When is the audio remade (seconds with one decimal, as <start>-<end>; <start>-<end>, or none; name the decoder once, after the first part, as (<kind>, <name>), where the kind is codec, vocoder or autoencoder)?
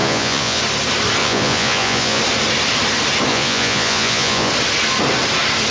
0.0-0.6 (vocoder, Vocos); 1.2-2.2; 3.3-4.5